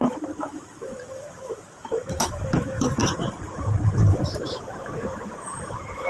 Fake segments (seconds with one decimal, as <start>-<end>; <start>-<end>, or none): 0.0-3.0; 4.1-6.1